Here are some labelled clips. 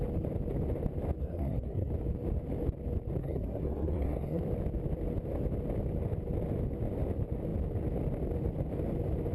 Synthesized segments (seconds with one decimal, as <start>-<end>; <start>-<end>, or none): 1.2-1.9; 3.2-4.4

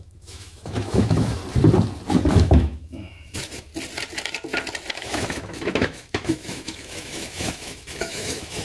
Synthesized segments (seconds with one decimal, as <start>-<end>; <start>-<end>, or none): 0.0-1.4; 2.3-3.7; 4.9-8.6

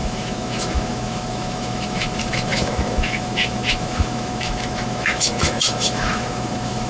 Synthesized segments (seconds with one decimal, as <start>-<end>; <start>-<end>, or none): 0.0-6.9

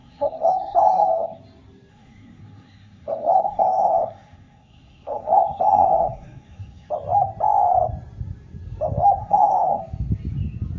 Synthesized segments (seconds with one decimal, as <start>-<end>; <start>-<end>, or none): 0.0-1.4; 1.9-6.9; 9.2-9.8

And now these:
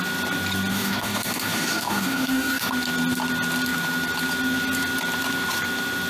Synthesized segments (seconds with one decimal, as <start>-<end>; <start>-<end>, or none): 0.7-2.7